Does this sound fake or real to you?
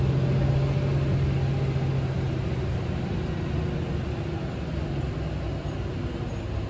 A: real